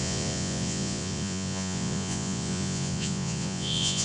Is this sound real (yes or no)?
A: no